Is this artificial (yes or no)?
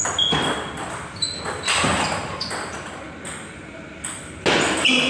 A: no